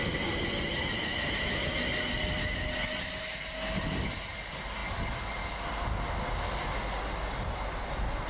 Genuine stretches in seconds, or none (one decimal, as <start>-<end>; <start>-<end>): 0.0-8.3

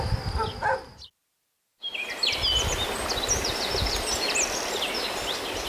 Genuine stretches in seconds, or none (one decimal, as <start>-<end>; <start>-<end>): 0.0-5.7

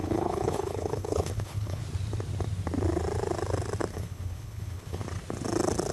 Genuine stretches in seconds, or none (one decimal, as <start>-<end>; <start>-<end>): 1.8-3.9; 5.0-5.9

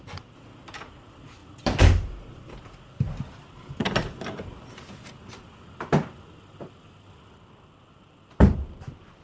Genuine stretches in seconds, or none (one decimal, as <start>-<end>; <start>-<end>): 0.0-9.2

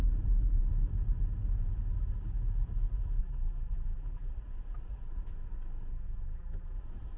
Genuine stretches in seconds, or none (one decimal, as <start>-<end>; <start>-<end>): 0.0-3.2; 4.3-5.9; 6.8-7.2